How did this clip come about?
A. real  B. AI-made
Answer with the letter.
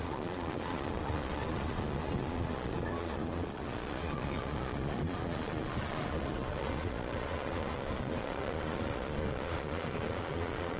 B